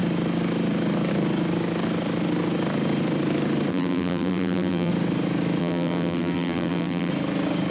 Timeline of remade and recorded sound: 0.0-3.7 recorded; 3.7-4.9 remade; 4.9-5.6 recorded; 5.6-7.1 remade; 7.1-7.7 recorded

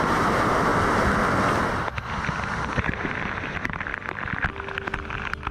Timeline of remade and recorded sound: 0.0-0.7 remade; 0.7-2.7 recorded; 2.7-3.9 remade; 3.9-5.5 recorded